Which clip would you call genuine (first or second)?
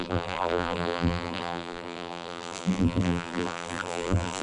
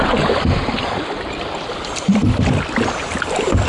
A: second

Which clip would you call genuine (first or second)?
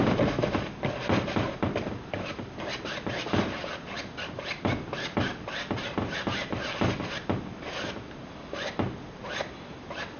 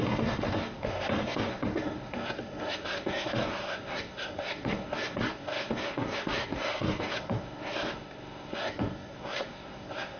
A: first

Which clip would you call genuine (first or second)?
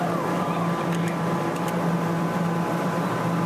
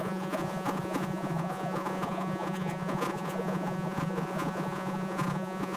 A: first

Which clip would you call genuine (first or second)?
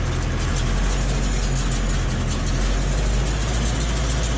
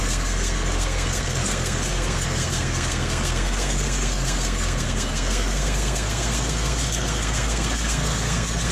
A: first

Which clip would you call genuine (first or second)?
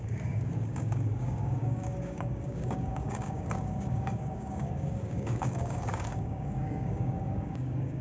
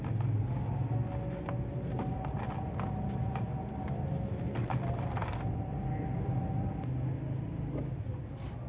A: second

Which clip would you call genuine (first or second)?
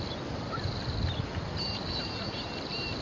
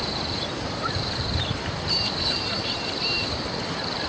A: first